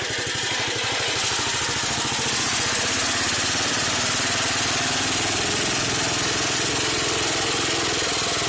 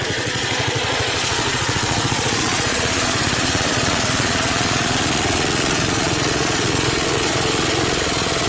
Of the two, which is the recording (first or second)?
first